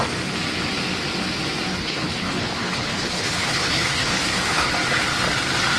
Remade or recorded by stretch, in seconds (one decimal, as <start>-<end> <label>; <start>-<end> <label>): 0.0-1.7 recorded; 1.7-4.7 remade; 4.7-5.8 recorded